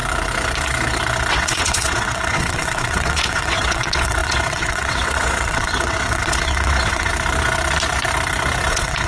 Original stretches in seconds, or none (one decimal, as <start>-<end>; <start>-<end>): 0.0-1.3; 7.1-8.7

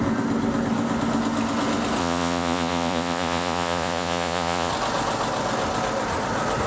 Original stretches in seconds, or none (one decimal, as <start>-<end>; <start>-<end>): 0.0-2.0; 4.7-6.7

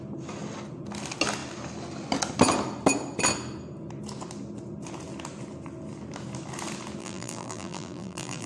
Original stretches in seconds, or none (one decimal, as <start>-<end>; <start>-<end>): 0.0-7.0

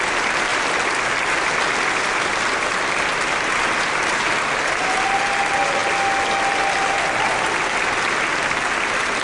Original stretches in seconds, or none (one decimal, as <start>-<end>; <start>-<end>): 0.0-9.2

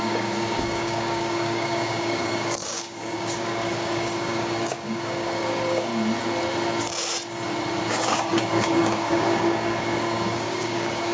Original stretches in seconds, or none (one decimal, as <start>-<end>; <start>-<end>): 5.9-7.9

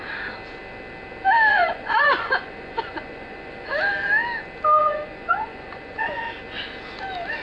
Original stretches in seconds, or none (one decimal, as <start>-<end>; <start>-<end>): 0.0-1.5; 3.7-4.8; 6.3-7.4